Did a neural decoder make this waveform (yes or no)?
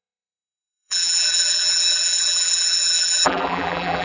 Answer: yes